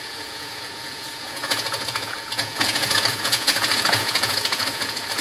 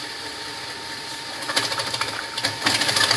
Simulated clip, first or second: first